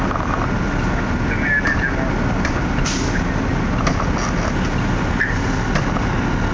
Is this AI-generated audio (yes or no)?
no